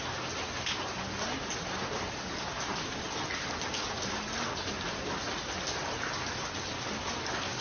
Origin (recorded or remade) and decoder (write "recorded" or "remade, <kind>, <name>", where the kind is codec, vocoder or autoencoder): recorded